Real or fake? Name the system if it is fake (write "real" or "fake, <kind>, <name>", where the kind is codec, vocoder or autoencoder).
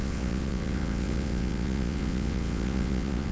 fake, vocoder, WaveNeXt